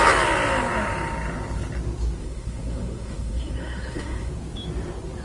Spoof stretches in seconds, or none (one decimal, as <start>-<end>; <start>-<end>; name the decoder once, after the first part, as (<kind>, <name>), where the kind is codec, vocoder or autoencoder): 2.2-4.3 (codec, SNAC)